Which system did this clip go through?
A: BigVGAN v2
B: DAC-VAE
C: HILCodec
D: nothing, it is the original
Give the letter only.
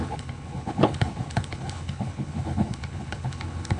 C